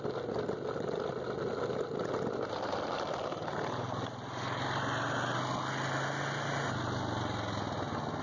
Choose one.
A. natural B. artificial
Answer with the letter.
A